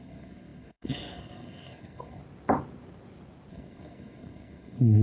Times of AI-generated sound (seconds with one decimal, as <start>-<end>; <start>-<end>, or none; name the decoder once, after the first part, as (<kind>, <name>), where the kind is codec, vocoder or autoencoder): 0.0-2.2 (codec, SNAC); 3.5-5.0